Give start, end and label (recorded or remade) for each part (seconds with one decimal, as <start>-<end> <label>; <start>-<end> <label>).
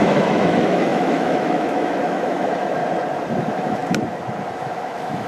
0.0-2.8 remade; 2.8-3.4 recorded; 3.4-3.8 remade; 3.8-4.6 recorded; 4.6-5.3 remade